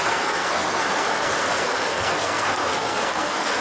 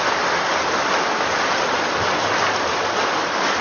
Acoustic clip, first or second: second